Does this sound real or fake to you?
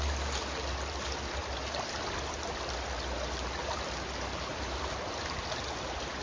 real